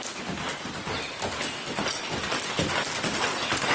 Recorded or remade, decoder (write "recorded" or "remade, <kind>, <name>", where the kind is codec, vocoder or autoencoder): recorded